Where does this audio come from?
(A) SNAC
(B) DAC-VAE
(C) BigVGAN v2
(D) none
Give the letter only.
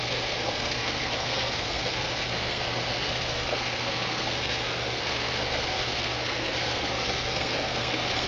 A